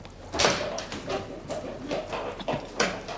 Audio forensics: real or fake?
real